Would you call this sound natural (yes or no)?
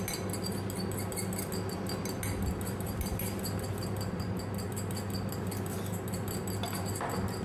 yes